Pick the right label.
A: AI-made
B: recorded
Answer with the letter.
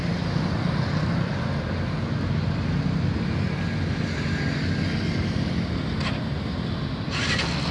B